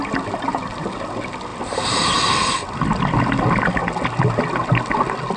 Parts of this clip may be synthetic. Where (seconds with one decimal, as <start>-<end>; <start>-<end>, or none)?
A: none